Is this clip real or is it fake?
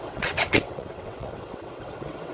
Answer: fake